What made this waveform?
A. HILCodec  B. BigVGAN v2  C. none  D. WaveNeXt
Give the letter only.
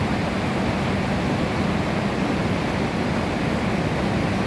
C